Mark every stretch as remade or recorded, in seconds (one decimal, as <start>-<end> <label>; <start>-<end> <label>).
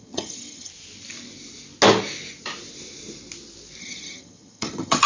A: 0.0-0.7 remade; 0.7-3.8 recorded; 3.8-5.1 remade